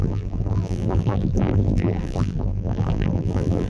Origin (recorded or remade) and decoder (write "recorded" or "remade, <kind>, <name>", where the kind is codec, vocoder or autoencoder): remade, vocoder, BigVGAN v2